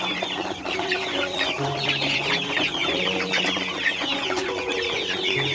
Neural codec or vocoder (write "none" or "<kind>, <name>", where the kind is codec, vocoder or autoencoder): vocoder, Vocos